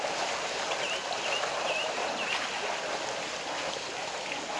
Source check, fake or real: fake